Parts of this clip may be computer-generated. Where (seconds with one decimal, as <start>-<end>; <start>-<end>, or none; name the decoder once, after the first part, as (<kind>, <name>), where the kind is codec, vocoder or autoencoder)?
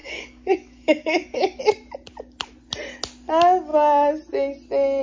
0.0-1.6 (codec, DAC)